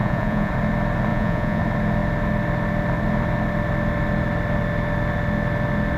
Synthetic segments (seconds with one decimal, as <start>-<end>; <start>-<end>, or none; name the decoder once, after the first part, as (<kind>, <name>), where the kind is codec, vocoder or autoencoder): 0.0-0.5 (vocoder, Vocos); 1.1-1.6